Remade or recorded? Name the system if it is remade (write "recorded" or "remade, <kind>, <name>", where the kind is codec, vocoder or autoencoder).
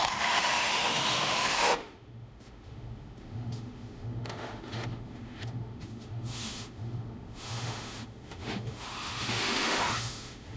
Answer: remade, autoencoder, DAC-VAE